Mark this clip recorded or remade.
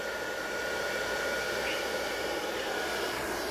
remade